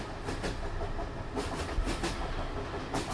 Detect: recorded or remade recorded